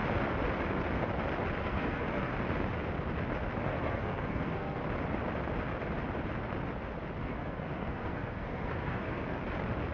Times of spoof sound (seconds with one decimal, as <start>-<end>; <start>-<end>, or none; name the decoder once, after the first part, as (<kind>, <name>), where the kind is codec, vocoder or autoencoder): 1.6-2.3 (codec, SNAC); 3.7-4.8; 7.3-9.4